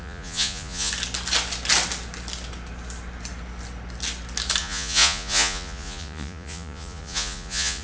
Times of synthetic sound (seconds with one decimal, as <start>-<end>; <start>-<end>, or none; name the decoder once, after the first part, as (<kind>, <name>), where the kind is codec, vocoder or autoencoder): 0.0-0.9 (vocoder, Vocos); 4.6-7.8